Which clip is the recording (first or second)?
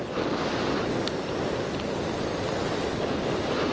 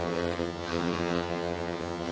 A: first